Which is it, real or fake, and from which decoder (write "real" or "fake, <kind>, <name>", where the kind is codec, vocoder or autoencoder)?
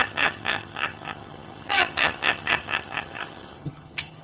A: fake, vocoder, HiFi-GAN